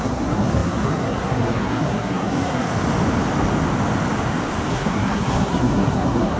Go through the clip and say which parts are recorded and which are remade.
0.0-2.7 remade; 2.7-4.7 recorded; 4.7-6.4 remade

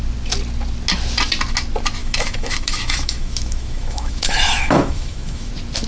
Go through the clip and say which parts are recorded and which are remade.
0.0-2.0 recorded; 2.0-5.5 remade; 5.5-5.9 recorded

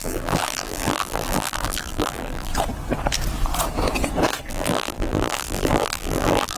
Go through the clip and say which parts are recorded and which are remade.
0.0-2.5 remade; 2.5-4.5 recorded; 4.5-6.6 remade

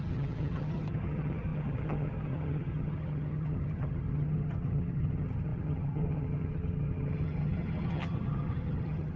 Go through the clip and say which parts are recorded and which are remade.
0.0-9.2 remade